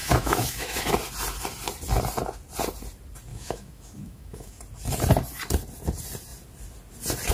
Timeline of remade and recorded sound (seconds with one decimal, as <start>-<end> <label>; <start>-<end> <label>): 0.0-0.8 remade; 0.8-3.3 recorded; 3.3-4.6 remade; 4.6-7.3 recorded